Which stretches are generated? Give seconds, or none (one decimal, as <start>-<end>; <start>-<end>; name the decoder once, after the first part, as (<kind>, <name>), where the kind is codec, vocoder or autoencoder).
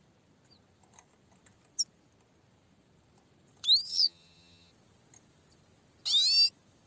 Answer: 3.9-4.7 (vocoder, HiFi-GAN)